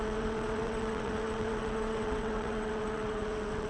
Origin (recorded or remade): remade